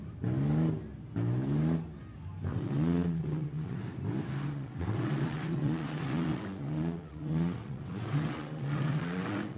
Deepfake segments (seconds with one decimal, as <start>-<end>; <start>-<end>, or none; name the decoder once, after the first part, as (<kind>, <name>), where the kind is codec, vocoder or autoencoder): 2.5-3.8 (vocoder, WaveNeXt); 4.5-9.6